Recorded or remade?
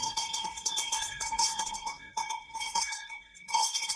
remade